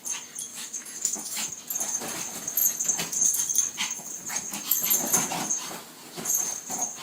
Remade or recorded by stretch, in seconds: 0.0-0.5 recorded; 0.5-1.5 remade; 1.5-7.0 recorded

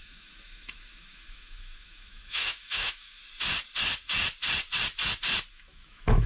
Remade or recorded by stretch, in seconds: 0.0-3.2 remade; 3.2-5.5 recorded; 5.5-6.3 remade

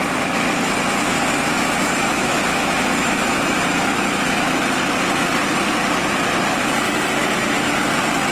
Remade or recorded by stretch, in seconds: 0.0-1.5 recorded; 1.5-4.6 remade; 4.6-7.2 recorded; 7.2-7.9 remade; 7.9-8.3 recorded